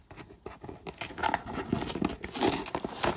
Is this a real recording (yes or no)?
yes